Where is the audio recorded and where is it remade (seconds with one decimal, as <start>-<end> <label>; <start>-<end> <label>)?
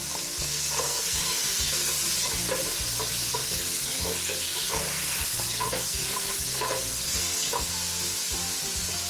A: 0.0-1.9 remade; 1.9-3.3 recorded; 3.3-7.7 remade; 7.7-9.1 recorded